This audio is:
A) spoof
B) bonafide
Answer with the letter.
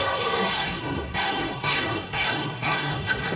A